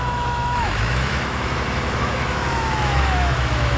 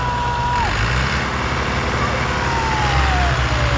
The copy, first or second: first